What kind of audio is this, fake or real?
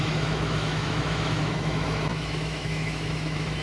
fake